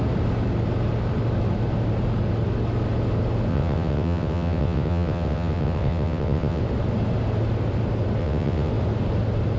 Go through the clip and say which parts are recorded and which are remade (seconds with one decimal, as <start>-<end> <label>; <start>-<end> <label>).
0.0-3.5 recorded; 3.5-6.6 remade; 6.6-8.2 recorded; 8.2-8.7 remade; 8.7-9.6 recorded